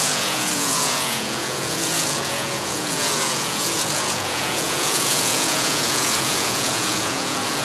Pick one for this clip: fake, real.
fake